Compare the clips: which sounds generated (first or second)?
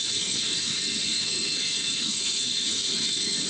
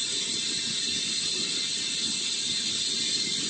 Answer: first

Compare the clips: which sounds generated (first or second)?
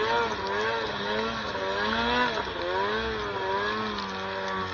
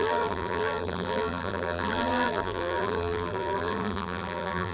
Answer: second